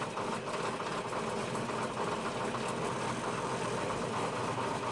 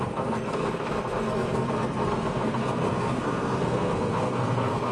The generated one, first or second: second